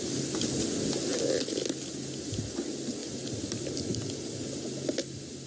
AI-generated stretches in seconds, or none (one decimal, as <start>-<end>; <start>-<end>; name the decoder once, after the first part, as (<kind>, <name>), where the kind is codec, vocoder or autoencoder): 3.0-4.3 (vocoder, BigVGAN v2)